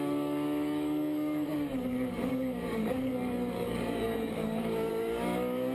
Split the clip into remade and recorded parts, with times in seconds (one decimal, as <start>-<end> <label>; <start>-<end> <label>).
0.0-5.7 remade

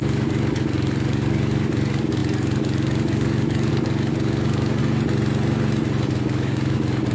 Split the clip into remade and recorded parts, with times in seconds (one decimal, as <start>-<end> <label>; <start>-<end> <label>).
0.0-4.8 remade; 4.8-6.1 recorded; 6.1-7.1 remade

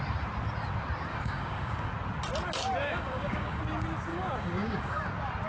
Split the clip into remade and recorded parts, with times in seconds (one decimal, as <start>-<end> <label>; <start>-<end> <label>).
0.0-1.1 recorded; 1.1-1.9 remade; 1.9-2.8 recorded; 2.8-3.6 remade; 3.6-4.1 recorded; 4.1-5.0 remade; 5.0-5.5 recorded

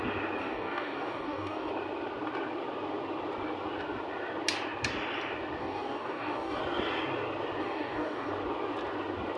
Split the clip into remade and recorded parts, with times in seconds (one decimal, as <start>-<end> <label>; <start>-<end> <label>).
0.0-0.4 recorded; 0.4-1.7 remade; 1.7-5.6 recorded; 5.6-6.6 remade; 6.6-7.6 recorded; 7.6-8.3 remade; 8.3-9.4 recorded

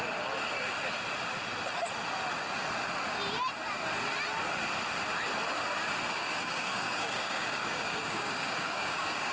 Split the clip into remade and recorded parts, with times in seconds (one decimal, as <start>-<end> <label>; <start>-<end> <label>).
0.0-6.2 recorded; 6.2-9.3 remade

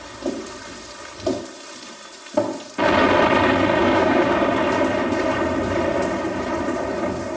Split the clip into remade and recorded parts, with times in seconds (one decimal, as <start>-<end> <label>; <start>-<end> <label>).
0.0-3.8 recorded; 3.8-4.5 remade; 4.5-7.4 recorded